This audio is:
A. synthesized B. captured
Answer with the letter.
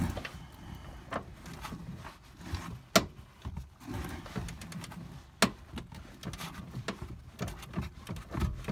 B